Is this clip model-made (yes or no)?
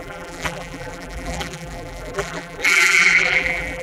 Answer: yes